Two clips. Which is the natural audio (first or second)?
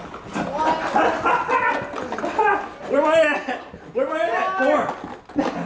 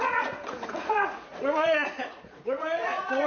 first